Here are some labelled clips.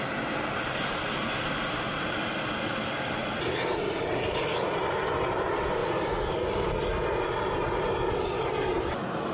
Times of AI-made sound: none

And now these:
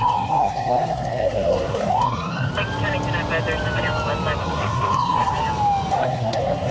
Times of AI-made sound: 0.0-2.5; 4.4-5.4; 5.9-6.7

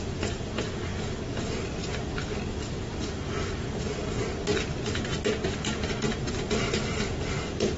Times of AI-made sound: 0.0-7.8

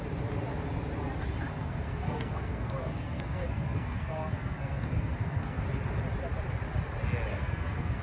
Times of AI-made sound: 1.5-5.6; 7.3-8.0

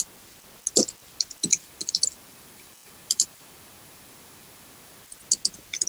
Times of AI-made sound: 1.5-5.0

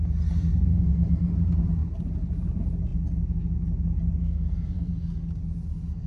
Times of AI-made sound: 0.7-1.3; 4.2-4.9